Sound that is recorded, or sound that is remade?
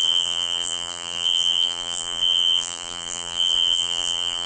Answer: remade